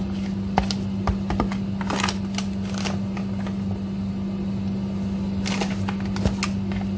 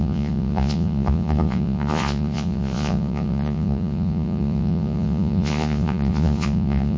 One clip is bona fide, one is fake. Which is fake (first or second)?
second